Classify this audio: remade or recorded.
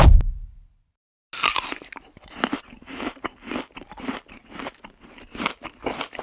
recorded